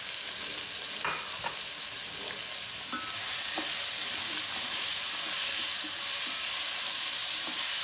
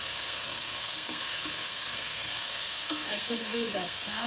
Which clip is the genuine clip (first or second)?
first